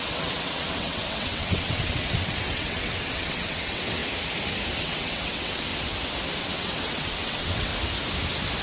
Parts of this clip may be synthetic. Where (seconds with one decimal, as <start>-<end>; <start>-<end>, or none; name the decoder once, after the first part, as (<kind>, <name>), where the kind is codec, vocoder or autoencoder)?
0.0-4.0 (vocoder, WaveNeXt); 4.8-5.7; 6.4-7.7